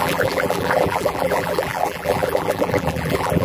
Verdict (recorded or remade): remade